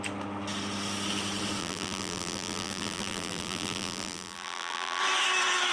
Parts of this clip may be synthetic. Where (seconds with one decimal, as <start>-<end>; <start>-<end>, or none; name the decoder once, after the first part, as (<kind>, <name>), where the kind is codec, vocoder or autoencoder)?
1.6-5.0 (vocoder, BigVGAN v2)